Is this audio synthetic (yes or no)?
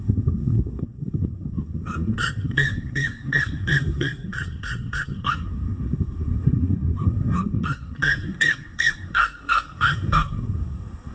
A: yes